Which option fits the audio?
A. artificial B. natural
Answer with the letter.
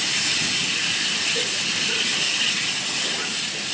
B